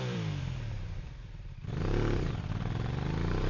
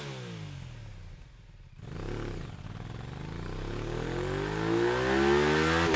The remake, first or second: first